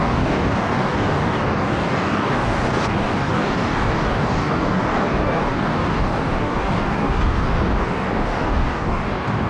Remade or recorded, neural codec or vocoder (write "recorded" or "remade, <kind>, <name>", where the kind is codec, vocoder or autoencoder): remade, codec, DAC